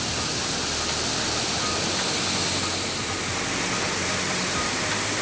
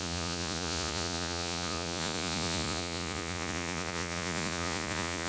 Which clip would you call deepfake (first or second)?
second